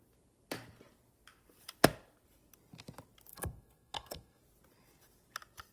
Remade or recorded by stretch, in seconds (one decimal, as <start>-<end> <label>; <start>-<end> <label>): 0.0-3.3 recorded; 3.3-4.4 remade; 4.4-5.7 recorded